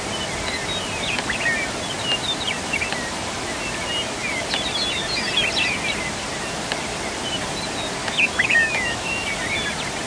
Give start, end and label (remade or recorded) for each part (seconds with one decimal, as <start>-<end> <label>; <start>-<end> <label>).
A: 0.0-8.0 recorded; 8.0-9.4 remade; 9.4-10.1 recorded